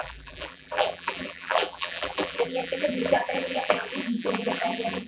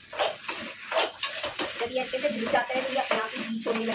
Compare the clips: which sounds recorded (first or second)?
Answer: second